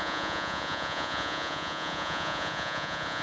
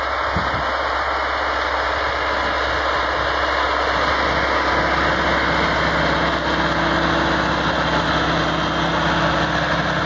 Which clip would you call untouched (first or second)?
second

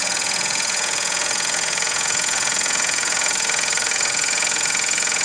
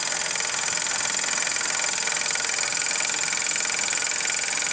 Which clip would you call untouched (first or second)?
second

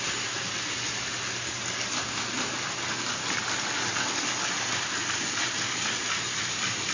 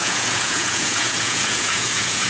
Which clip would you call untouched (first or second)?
first